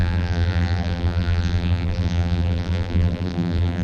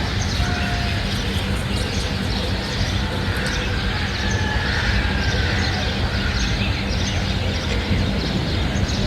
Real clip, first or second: second